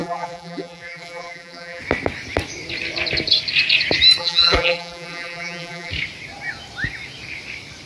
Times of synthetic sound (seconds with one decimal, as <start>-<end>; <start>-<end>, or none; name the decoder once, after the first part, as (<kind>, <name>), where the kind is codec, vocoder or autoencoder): 0.0-1.8 (vocoder, BigVGAN v2); 4.2-5.9